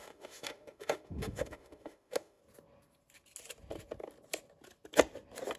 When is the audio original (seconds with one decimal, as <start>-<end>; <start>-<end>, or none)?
2.4-5.6

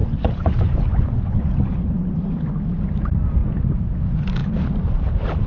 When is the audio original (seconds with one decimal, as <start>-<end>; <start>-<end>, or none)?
2.1-5.5

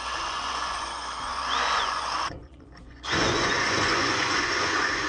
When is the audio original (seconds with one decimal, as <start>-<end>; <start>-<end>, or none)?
none

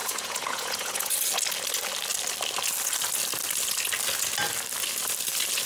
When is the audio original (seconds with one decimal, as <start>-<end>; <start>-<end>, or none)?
1.1-5.7

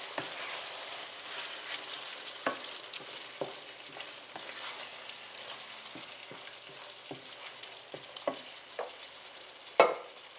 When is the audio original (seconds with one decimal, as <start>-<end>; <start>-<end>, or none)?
0.0-10.4

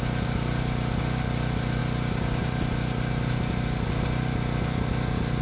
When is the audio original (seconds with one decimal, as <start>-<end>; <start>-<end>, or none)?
0.0-5.4

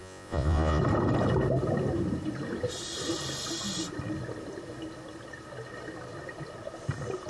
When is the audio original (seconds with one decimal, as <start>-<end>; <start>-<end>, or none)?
0.8-7.3

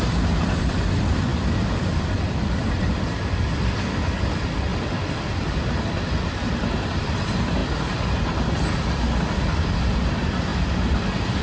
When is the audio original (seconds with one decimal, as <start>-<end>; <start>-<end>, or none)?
7.6-8.9